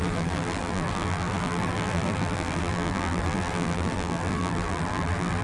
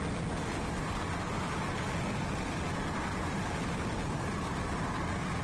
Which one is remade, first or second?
first